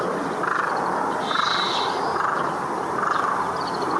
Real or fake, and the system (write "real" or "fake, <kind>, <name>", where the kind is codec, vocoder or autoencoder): real